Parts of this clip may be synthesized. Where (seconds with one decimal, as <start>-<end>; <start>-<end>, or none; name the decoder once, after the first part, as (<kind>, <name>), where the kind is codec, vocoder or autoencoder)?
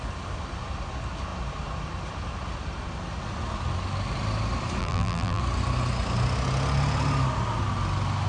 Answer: 4.8-5.4 (vocoder, BigVGAN v2)